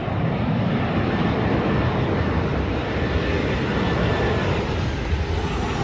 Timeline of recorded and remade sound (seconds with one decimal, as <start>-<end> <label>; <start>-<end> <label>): 0.0-3.5 remade; 3.5-5.8 recorded